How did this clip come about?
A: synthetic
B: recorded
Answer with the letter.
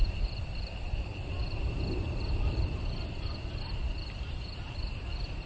A